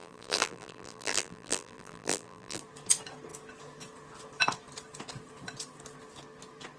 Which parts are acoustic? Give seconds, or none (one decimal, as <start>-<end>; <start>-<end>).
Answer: 2.6-6.8